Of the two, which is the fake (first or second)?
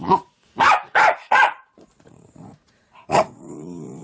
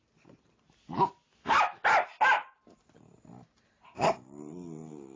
first